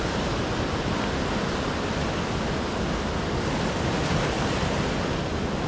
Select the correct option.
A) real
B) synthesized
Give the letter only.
A